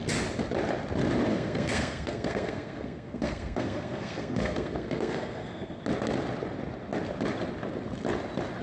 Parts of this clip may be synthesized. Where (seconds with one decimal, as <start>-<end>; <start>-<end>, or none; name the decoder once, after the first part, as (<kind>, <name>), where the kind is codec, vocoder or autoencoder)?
1.3-5.8 (codec, SNAC)